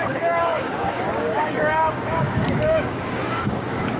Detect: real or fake fake